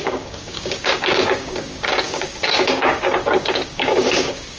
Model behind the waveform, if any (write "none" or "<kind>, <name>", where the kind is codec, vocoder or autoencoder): codec, DAC